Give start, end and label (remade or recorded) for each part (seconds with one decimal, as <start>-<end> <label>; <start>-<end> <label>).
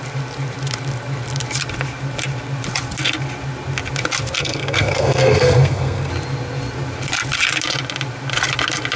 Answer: 0.0-4.4 recorded; 4.4-6.1 remade; 6.1-9.0 recorded